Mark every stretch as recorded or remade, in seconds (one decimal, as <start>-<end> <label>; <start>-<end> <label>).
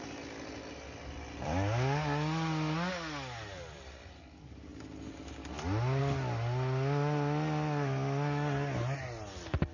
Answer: 0.0-9.7 recorded